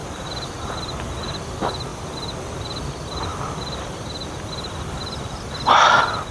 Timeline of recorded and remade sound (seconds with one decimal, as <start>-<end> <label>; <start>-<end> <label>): 0.0-6.3 recorded